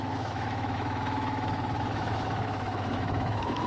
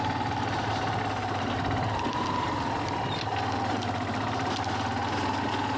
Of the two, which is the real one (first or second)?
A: second